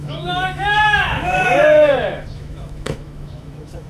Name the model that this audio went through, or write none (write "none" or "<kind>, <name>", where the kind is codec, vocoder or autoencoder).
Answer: autoencoder, DAC-VAE